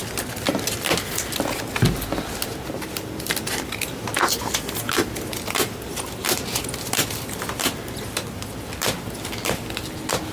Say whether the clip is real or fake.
real